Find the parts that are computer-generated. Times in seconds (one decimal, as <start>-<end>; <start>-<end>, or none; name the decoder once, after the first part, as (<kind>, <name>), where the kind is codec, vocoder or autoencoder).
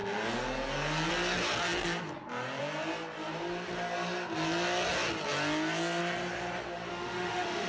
6.9-7.7 (autoencoder, DAC-VAE)